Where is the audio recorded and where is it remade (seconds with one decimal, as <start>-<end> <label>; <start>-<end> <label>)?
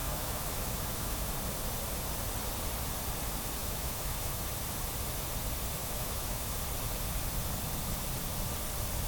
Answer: 0.0-1.3 remade; 1.3-3.6 recorded; 3.6-4.4 remade; 4.4-5.8 recorded; 5.8-6.6 remade; 6.6-9.1 recorded